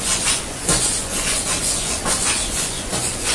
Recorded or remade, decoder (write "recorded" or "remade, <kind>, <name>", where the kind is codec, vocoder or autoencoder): remade, vocoder, Vocos